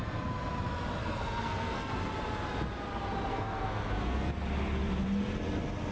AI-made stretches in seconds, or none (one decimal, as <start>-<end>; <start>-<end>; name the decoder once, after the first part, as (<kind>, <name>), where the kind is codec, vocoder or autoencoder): 1.0-1.9 (codec, SNAC); 3.3-4.3